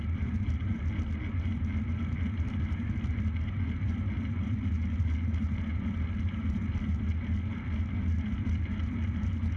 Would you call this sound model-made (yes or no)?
no